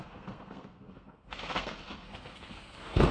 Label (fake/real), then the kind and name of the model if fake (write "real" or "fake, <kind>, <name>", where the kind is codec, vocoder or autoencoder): fake, codec, SNAC